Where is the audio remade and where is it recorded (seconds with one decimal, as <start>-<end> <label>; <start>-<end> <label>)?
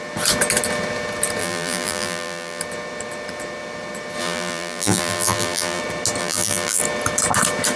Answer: 0.0-1.4 recorded; 1.4-2.6 remade; 2.6-4.2 recorded; 4.2-5.8 remade; 5.8-6.2 recorded; 6.2-6.8 remade; 6.8-7.8 recorded